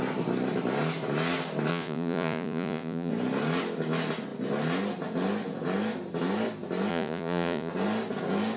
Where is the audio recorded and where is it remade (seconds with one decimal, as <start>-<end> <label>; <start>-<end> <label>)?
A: 0.0-1.7 recorded; 1.7-3.1 remade; 3.1-6.9 recorded; 6.9-7.7 remade; 7.7-8.6 recorded